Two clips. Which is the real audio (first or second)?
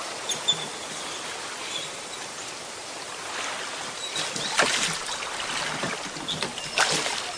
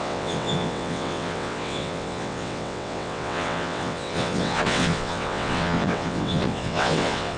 first